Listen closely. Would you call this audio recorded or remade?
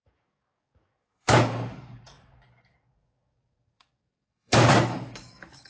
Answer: remade